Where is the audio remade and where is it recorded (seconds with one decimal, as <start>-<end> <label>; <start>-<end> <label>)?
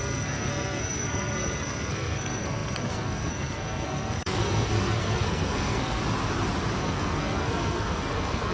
0.0-6.0 remade; 6.0-6.8 recorded; 6.8-8.5 remade